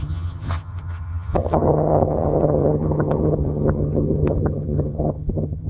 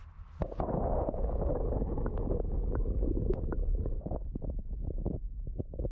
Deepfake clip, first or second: first